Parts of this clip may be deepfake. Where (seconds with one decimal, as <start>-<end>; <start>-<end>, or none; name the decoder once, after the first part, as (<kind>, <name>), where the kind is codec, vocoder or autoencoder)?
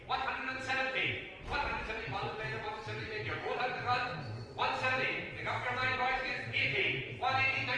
1.5-3.8 (vocoder, BigVGAN v2)